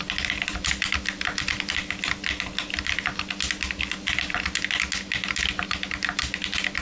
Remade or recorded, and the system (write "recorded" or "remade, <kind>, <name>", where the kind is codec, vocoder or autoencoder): recorded